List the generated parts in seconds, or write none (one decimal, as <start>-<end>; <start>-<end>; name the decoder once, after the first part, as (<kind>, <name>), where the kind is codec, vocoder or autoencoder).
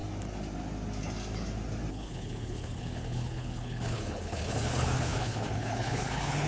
1.9-6.5 (codec, HILCodec)